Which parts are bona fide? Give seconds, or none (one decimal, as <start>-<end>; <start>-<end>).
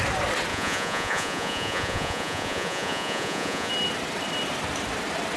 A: 0.0-0.5; 3.7-5.4